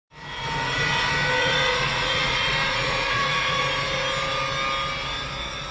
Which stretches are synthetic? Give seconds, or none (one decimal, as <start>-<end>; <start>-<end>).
1.4-3.6